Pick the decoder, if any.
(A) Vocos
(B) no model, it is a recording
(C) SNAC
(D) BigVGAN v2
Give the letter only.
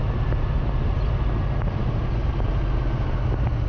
B